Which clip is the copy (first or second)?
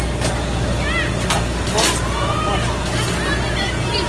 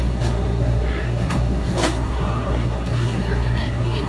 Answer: second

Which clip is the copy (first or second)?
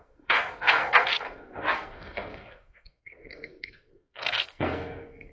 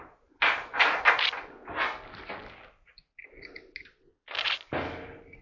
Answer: first